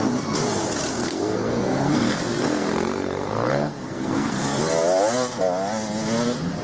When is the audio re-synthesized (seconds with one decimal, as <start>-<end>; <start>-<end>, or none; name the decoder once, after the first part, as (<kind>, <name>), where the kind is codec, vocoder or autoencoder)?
0.9-4.6 (codec, SNAC)